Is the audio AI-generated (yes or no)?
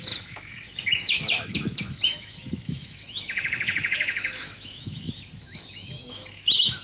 yes